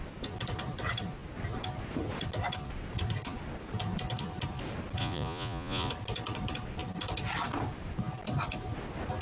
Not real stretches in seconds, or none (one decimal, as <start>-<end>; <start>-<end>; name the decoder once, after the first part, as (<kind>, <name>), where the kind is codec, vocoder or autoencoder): 5.0-5.9 (vocoder, Vocos)